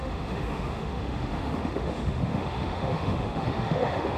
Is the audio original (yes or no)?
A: no